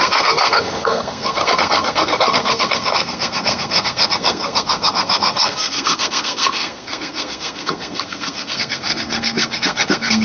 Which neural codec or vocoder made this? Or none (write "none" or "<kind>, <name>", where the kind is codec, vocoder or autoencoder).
codec, SNAC